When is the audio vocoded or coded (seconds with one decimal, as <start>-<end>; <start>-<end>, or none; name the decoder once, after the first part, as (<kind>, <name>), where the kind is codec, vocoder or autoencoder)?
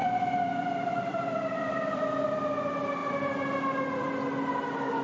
0.0-2.0 (vocoder, BigVGAN v2)